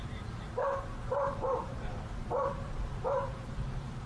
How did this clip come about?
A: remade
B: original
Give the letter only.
A